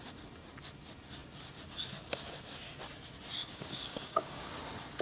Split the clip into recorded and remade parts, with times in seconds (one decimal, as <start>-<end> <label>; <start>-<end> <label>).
0.0-3.4 recorded; 3.4-4.5 remade; 4.5-5.0 recorded